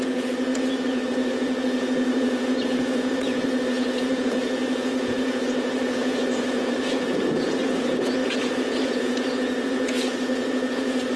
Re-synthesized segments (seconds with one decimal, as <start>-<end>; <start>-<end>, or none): 0.0-11.2